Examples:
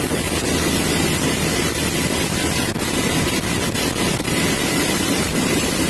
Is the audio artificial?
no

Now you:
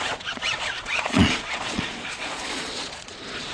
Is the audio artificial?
yes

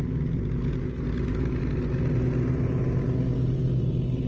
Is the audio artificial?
no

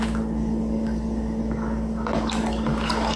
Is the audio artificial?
yes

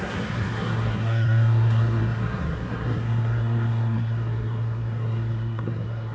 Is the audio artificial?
yes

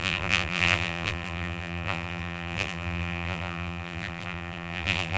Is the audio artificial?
yes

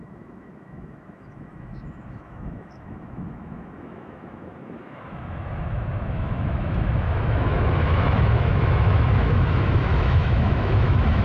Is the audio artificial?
yes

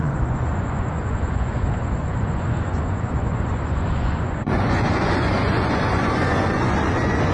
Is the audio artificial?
yes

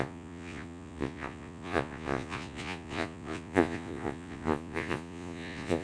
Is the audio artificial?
yes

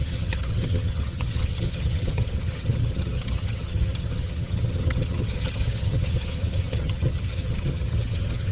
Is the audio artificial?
yes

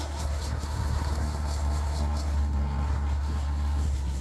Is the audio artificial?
yes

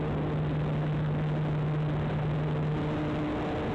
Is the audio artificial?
no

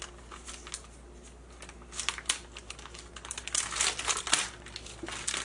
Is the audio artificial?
no